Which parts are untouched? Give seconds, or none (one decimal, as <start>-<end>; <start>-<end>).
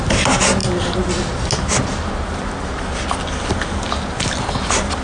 0.0-5.0